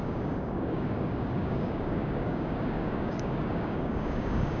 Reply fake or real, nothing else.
fake